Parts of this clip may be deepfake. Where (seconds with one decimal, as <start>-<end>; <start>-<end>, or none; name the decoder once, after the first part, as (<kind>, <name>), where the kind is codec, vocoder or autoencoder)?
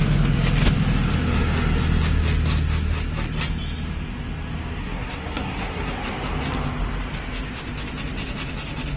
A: 4.8-5.9 (codec, SNAC)